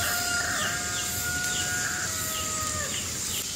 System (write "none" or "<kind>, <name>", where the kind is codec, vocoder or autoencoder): none